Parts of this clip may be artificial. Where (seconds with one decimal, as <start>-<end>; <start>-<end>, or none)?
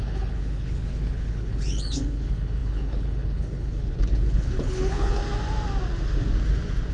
0.0-5.2